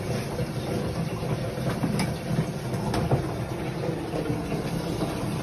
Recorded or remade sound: remade